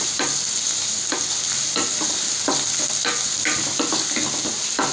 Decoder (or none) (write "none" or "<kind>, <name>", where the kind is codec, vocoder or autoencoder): none